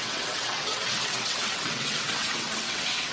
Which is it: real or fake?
fake